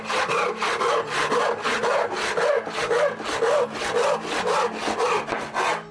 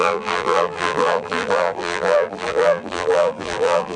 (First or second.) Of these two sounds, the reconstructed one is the second